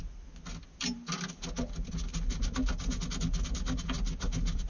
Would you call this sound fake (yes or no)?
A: no